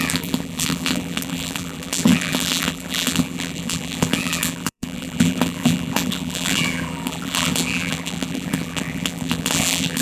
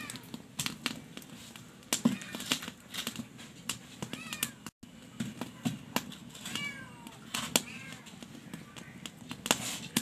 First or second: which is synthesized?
first